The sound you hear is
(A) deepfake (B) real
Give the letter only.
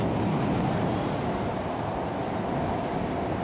B